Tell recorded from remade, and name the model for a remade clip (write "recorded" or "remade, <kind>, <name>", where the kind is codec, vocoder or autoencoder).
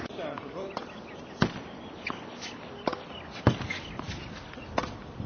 recorded